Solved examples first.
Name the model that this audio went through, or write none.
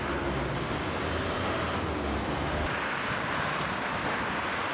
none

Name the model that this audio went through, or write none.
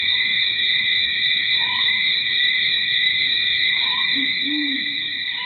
autoencoder, DAC-VAE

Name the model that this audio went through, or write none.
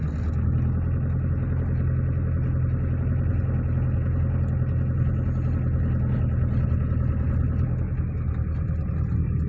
none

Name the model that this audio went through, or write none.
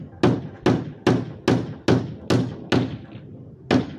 none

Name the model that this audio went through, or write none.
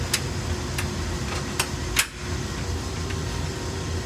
none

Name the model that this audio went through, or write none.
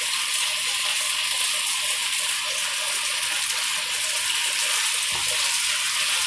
none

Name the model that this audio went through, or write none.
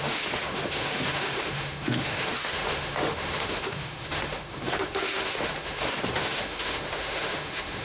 autoencoder, DAC-VAE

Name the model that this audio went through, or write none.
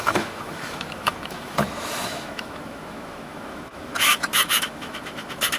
autoencoder, DAC-VAE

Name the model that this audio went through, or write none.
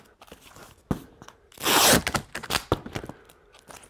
none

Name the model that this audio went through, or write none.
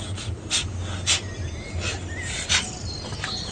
none